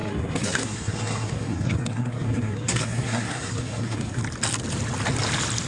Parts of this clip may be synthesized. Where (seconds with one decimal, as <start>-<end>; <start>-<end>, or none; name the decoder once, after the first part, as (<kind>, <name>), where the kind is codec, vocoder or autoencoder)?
0.0-4.2 (codec, SNAC)

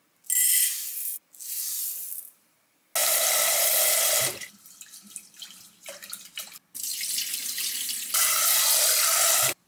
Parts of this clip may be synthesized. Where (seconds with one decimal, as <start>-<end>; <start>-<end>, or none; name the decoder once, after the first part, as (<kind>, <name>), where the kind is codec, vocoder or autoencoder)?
3.0-5.4 (vocoder, BigVGAN v2)

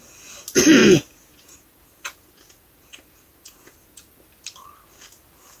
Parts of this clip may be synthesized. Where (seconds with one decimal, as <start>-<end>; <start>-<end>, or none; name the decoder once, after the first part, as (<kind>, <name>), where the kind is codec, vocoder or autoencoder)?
0.8-4.2 (vocoder, Vocos)

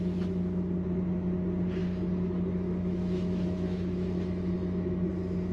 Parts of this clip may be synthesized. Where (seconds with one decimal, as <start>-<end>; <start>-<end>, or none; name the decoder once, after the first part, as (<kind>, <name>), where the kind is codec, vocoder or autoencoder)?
1.8-5.1 (autoencoder, DAC-VAE)

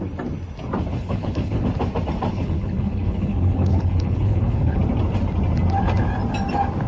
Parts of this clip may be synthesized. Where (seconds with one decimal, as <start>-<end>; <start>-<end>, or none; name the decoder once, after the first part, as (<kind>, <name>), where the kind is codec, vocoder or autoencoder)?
0.9-1.6 (codec, HILCodec); 2.3-4.8

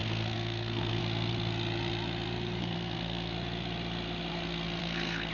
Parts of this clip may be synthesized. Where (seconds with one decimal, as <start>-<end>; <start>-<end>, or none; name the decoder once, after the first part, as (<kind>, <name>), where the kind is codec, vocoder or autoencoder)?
0.0-1.0 (codec, SNAC); 2.6-3.3; 4.8-5.3